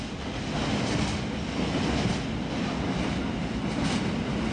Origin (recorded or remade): recorded